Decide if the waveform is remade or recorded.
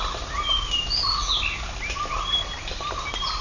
recorded